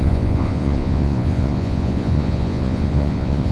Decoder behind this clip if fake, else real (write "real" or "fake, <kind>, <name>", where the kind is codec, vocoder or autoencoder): fake, vocoder, Vocos